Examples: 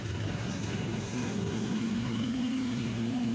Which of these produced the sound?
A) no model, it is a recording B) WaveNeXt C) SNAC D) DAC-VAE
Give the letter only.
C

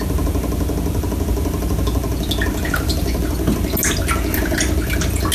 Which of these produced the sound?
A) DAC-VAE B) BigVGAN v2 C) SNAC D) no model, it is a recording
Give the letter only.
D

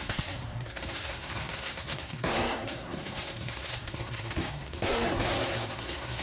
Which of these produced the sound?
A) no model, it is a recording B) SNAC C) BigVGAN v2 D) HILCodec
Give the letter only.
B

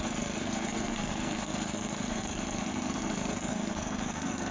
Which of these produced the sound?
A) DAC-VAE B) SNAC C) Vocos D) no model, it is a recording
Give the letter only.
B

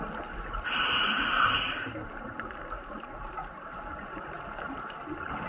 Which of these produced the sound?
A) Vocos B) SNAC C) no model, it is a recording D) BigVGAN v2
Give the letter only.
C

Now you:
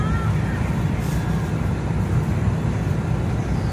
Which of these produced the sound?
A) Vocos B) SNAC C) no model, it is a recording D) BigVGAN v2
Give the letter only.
C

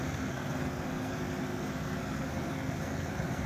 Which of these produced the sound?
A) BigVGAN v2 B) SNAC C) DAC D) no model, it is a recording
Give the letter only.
B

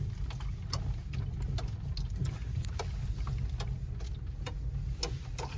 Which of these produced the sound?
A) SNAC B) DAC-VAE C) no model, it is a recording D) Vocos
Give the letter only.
C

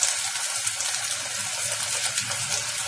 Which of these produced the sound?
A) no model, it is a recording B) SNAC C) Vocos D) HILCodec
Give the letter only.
A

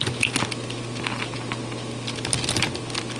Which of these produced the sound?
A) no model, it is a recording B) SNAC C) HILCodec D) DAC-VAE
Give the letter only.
A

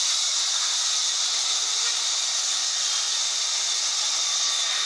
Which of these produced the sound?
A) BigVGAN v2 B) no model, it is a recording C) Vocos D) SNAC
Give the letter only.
B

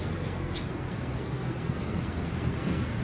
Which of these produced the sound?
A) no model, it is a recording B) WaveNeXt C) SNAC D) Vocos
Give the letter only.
C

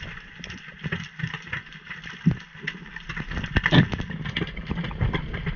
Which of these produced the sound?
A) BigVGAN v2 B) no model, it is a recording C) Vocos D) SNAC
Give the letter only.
B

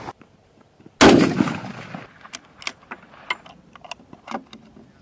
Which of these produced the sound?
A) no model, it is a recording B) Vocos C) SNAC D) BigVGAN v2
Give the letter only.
A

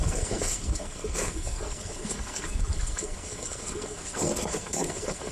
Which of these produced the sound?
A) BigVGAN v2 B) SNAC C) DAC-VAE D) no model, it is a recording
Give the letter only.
B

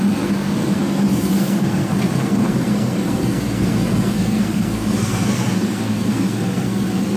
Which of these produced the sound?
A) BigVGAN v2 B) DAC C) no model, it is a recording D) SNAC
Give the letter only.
D